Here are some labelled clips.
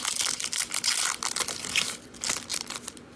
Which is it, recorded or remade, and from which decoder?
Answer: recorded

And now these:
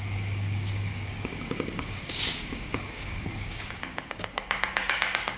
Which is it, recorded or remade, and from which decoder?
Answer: remade, codec, DAC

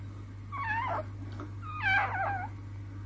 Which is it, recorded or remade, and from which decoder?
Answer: recorded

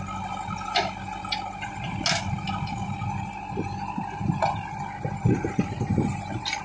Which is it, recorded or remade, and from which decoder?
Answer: recorded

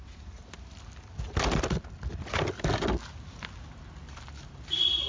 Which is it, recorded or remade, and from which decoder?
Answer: recorded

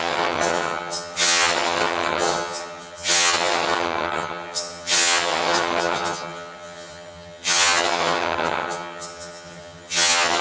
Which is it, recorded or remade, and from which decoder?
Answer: remade, vocoder, HiFi-GAN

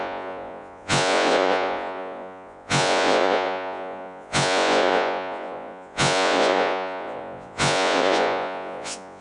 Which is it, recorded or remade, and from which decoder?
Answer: remade, vocoder, Vocos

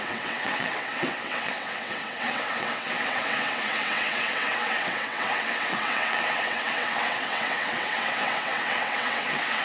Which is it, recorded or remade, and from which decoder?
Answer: remade, vocoder, WaveNeXt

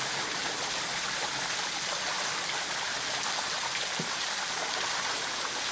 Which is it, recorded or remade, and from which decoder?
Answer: recorded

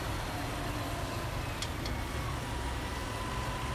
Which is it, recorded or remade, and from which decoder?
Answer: recorded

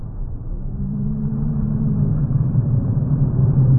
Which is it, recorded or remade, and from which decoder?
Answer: remade, vocoder, BigVGAN v2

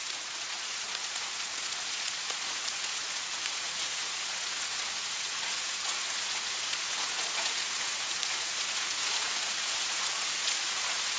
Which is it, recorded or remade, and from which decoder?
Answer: remade, vocoder, Vocos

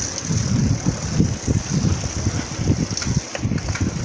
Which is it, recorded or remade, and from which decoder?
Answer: recorded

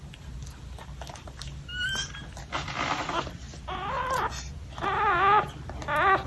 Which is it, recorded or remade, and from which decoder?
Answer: recorded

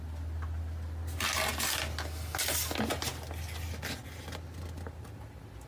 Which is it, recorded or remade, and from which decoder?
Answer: recorded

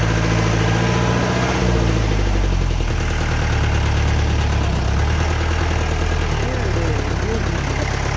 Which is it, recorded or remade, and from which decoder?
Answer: recorded